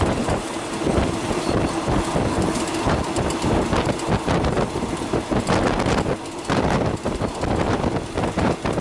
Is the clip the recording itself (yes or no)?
yes